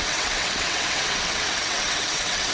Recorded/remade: remade